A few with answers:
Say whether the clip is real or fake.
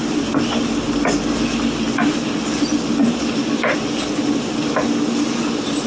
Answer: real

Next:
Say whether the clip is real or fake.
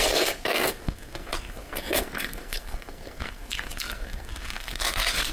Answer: fake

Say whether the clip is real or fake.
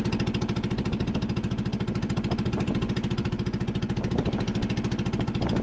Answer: real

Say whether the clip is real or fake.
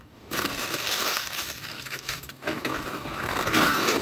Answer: fake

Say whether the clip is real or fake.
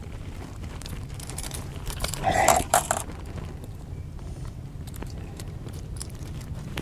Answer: fake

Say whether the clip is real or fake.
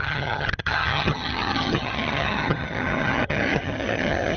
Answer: fake